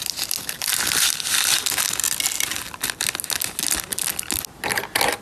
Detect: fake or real real